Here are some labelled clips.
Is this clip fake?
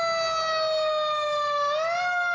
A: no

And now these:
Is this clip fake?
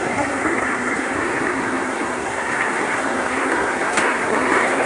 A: yes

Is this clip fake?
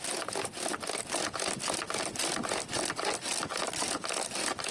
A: no